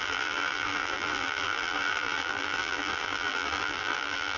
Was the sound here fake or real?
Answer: fake